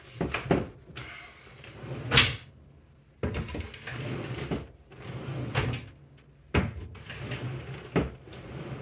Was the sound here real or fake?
real